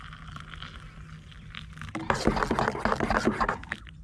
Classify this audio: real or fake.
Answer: real